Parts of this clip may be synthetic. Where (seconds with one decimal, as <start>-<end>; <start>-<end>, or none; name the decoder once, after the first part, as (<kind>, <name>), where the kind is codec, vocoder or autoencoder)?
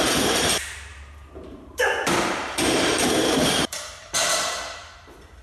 0.9-4.1 (vocoder, BigVGAN v2)